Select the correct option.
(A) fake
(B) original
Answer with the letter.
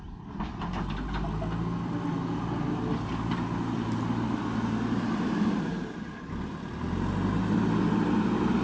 B